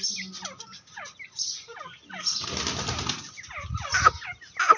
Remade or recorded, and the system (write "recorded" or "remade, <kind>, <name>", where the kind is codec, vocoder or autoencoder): recorded